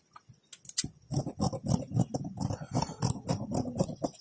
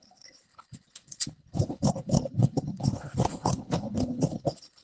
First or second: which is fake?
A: second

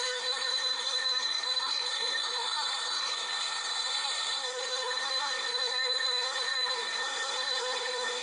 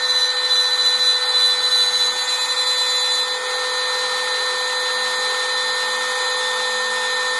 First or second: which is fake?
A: first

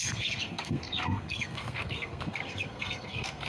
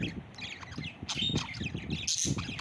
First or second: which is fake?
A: first